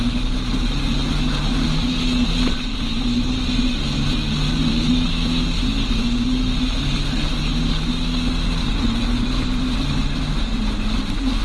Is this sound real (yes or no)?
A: yes